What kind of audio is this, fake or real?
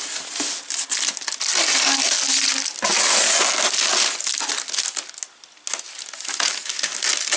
real